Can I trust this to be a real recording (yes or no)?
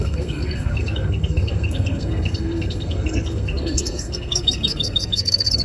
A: no